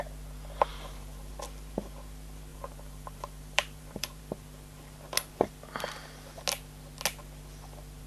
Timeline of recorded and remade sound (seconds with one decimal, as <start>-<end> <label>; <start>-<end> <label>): 0.0-0.7 recorded; 0.7-1.3 remade; 1.3-2.5 recorded; 2.5-4.2 remade; 4.2-8.1 recorded